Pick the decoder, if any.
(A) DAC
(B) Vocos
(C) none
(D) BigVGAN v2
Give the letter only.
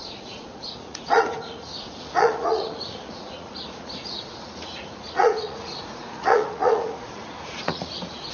B